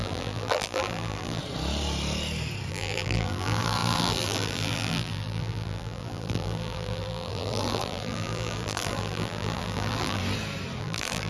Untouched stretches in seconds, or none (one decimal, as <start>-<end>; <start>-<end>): 1.4-2.7; 10.2-10.8